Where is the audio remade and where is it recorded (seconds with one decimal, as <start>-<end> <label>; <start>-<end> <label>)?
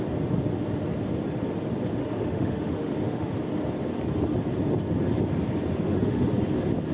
0.0-2.0 recorded; 2.0-3.4 remade; 3.4-5.7 recorded; 5.7-6.3 remade; 6.3-6.9 recorded